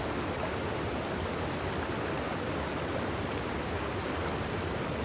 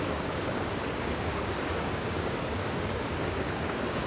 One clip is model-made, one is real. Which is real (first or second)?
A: first